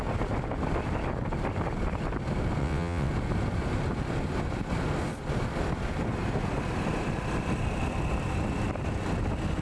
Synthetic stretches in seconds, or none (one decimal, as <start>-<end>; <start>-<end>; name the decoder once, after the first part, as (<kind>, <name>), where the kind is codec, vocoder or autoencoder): 2.6-3.1 (vocoder, WaveNeXt)